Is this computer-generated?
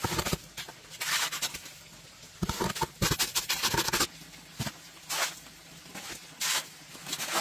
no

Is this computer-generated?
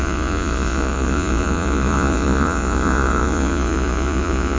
yes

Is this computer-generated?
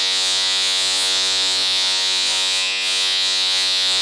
yes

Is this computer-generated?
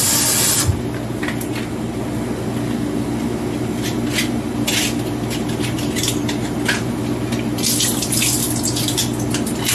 no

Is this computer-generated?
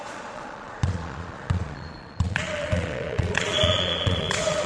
yes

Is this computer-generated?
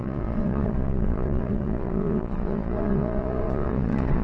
yes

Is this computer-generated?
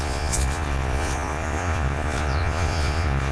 yes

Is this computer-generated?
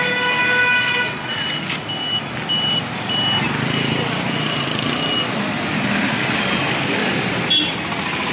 no